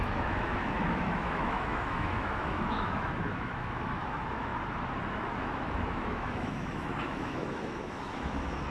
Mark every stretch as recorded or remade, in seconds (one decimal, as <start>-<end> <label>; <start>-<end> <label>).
0.0-4.5 remade; 4.5-5.1 recorded; 5.1-8.7 remade